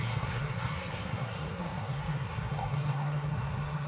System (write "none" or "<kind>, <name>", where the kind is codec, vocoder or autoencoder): codec, SNAC